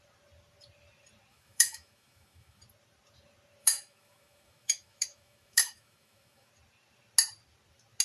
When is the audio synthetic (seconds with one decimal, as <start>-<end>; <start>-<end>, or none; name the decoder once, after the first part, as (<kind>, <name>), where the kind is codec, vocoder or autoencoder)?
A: 1.3-2.6 (autoencoder, DAC-VAE); 3.6-6.5